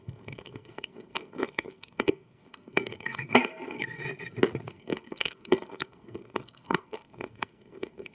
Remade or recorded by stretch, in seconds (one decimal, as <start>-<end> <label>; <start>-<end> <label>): 0.0-4.0 remade; 4.0-4.7 recorded; 4.7-8.1 remade